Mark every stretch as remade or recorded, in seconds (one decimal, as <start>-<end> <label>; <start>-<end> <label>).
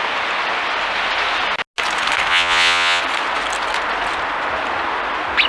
0.0-2.3 recorded; 2.3-3.0 remade; 3.0-5.5 recorded